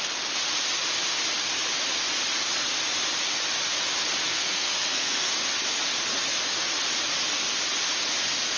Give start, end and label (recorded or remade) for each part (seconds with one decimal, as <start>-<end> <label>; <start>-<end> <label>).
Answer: 0.0-4.3 recorded; 4.3-5.3 remade; 5.3-8.6 recorded